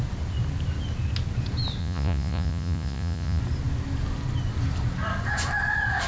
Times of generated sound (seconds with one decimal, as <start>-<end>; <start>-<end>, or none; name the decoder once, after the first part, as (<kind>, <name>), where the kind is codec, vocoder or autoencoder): 1.8-3.4 (vocoder, Vocos)